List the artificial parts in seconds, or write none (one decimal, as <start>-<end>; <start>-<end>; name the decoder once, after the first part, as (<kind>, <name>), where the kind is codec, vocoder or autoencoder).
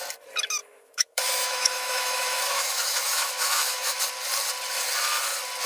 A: 0.6-4.0 (autoencoder, DAC-VAE)